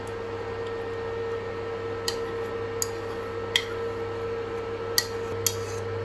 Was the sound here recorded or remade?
recorded